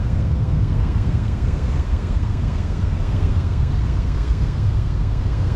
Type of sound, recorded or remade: remade